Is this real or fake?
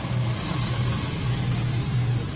real